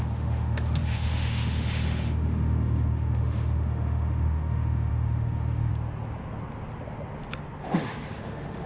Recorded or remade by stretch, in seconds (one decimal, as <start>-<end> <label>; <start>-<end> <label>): 0.0-5.7 remade; 5.7-7.6 recorded; 7.6-8.7 remade